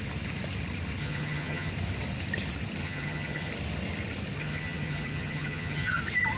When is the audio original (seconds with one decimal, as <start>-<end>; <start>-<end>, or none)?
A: 0.0-1.0; 1.7-2.8; 3.5-4.4; 6.0-6.4